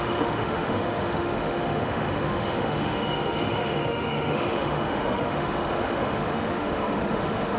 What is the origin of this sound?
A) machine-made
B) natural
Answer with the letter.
A